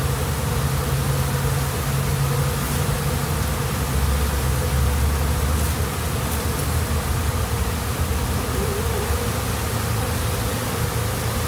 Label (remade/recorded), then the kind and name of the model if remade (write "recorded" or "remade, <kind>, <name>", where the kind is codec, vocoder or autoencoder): recorded